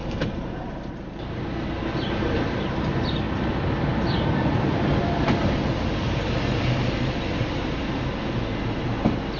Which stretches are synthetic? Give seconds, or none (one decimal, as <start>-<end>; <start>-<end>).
none